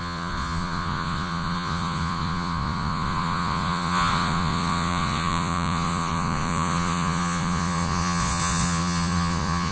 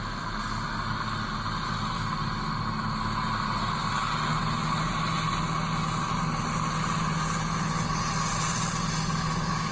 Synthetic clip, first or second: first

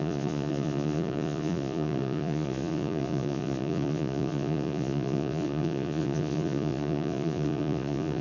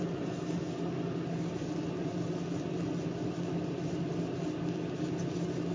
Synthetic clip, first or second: first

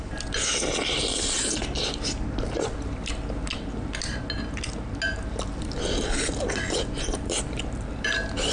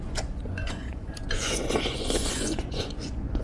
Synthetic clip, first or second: second